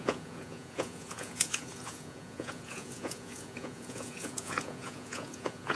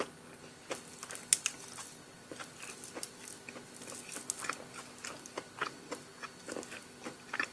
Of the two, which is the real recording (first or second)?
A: second